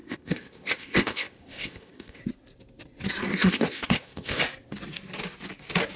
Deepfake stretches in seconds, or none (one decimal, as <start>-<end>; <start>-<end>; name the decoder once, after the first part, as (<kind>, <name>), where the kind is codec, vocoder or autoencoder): 0.0-2.2 (codec, ZipCodec); 3.3-4.4